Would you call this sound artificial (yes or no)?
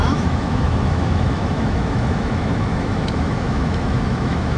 yes